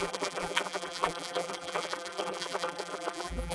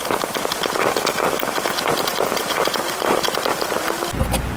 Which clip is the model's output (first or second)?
first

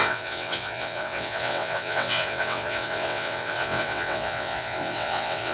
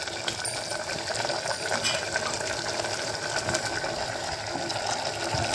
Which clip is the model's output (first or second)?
first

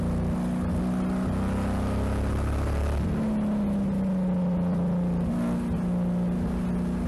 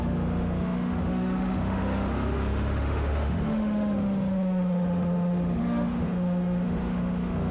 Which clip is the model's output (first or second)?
second